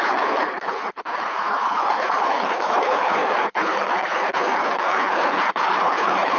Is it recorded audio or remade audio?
remade